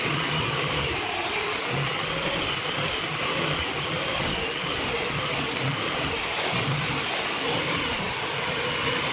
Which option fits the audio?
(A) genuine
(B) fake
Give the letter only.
A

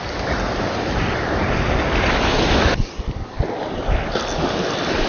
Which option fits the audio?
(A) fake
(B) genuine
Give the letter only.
B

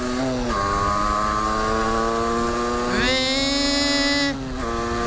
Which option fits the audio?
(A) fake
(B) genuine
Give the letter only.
B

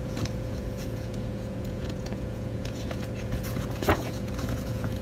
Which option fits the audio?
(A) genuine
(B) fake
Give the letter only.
B